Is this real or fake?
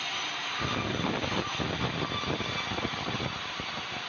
real